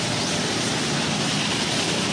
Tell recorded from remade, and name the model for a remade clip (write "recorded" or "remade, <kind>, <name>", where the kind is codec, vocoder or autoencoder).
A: remade, vocoder, BigVGAN v2